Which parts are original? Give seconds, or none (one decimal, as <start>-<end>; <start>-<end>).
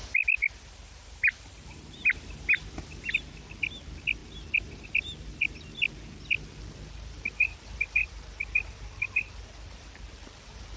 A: 0.0-4.2; 5.8-8.0; 10.1-10.8